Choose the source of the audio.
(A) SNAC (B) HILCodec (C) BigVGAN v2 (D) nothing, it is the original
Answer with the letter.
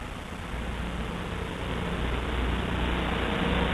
D